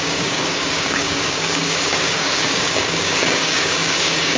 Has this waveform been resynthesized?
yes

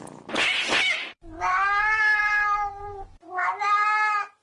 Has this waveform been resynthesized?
no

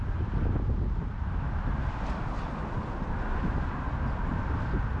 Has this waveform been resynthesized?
no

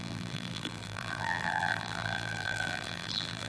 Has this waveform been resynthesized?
yes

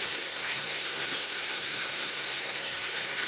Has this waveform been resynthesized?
yes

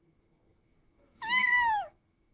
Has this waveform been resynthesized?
yes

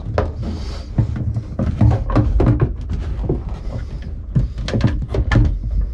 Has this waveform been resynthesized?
no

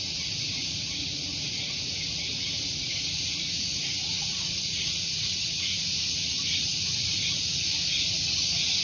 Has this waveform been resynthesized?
yes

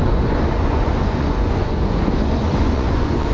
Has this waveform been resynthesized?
yes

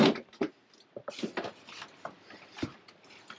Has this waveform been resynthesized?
no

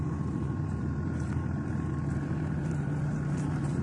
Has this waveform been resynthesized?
yes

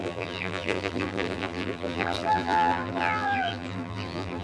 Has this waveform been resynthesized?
yes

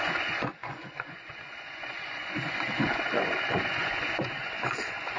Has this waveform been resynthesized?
yes